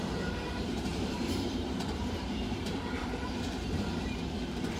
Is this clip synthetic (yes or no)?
yes